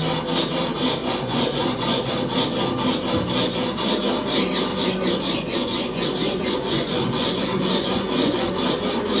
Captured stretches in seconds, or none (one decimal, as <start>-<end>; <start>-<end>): 0.0-1.0; 2.1-4.7; 8.5-9.2